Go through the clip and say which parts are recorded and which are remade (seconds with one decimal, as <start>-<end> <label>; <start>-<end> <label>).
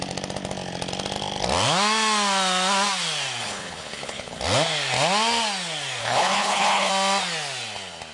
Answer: 0.0-3.4 recorded; 3.4-4.4 remade; 4.4-6.0 recorded; 6.0-6.9 remade; 6.9-8.1 recorded